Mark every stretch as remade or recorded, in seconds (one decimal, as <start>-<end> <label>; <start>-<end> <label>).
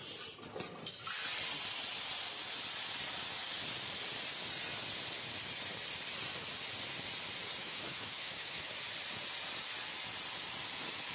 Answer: 0.0-7.6 recorded; 7.6-8.8 remade; 8.8-11.1 recorded